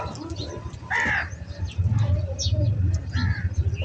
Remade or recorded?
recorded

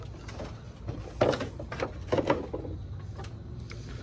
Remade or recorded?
recorded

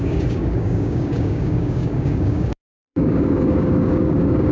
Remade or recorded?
remade